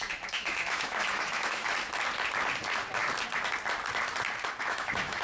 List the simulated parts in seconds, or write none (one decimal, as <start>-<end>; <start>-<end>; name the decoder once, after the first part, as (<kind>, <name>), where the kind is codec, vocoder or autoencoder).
0.0-1.7 (autoencoder, DAC-VAE); 4.6-5.2